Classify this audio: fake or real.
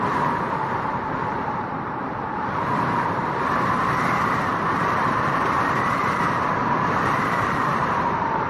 fake